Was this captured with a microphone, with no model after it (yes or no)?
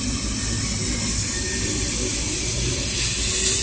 yes